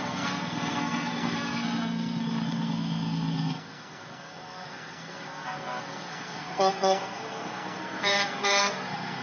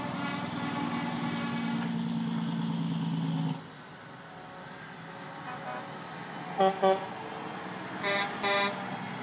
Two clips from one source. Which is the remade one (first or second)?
first